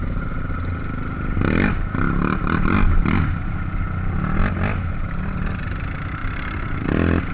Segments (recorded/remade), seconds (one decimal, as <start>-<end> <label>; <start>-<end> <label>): 0.0-7.3 recorded